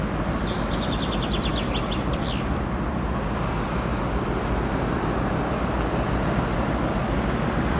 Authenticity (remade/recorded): recorded